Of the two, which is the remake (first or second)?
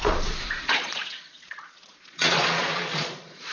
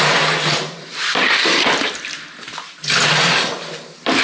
first